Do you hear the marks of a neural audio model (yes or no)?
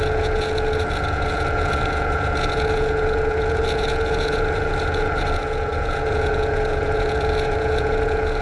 yes